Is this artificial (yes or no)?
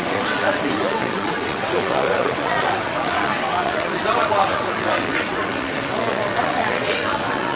yes